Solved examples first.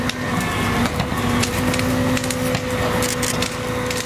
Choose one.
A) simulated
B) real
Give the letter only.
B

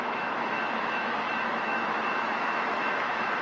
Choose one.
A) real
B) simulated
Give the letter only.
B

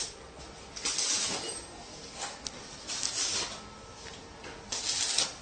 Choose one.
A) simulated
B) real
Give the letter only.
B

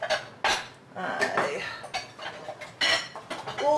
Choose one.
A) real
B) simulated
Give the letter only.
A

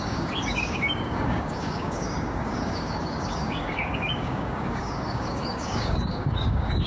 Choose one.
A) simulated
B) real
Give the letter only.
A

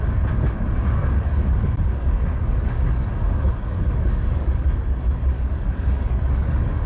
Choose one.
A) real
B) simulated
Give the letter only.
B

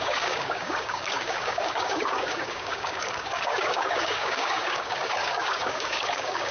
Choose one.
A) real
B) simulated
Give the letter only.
B